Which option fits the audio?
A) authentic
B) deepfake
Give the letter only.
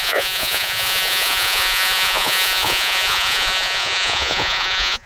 B